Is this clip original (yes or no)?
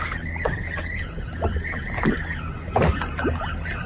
yes